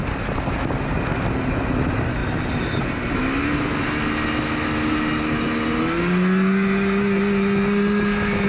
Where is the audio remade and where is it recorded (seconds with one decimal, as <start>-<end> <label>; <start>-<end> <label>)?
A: 0.0-8.5 recorded